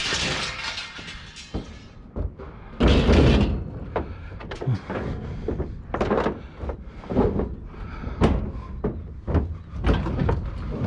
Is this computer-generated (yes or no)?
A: no